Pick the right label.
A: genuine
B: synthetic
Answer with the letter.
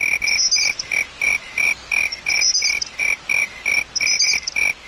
A